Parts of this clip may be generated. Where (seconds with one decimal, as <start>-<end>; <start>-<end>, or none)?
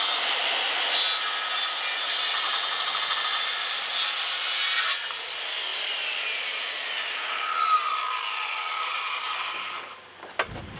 none